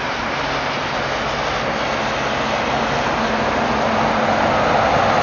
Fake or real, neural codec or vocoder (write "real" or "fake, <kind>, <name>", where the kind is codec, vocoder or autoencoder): real